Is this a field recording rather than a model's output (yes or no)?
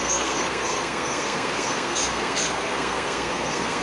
no